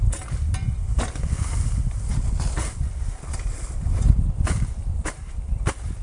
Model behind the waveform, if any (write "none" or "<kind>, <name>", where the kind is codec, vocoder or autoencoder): none